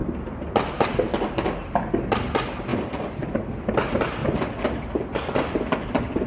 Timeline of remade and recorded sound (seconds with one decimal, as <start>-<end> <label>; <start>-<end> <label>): 0.0-2.7 recorded; 2.7-3.7 remade; 3.7-6.3 recorded